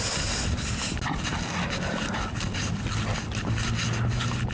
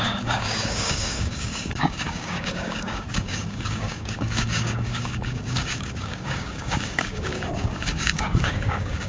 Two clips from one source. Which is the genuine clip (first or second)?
first